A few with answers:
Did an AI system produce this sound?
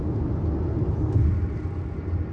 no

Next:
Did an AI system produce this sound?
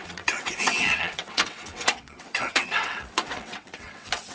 yes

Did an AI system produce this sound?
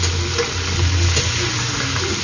no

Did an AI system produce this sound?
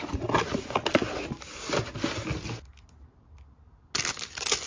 no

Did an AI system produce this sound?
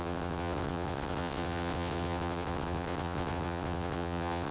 yes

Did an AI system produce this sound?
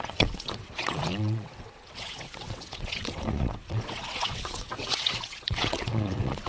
yes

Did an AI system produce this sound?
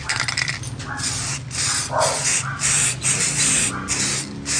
no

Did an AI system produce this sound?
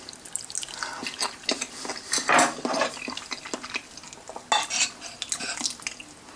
no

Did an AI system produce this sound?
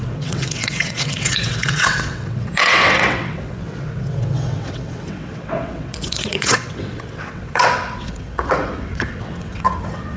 yes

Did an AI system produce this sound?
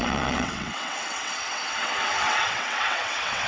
yes